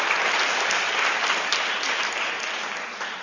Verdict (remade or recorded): recorded